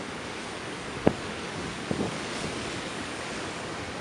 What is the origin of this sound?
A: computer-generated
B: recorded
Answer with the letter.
A